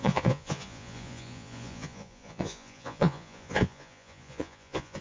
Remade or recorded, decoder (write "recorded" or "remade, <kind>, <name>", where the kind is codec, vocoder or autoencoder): remade, vocoder, Vocos